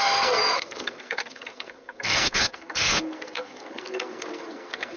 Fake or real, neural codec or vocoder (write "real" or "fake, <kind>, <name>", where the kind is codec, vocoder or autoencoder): fake, codec, SNAC